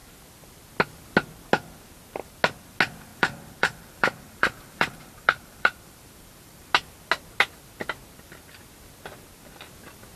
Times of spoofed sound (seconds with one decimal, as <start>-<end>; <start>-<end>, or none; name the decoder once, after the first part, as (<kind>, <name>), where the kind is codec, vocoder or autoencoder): 3.1-6.7 (vocoder, BigVGAN v2)